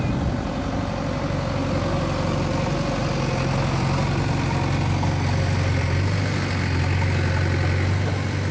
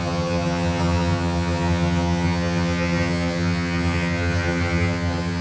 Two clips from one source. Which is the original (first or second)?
first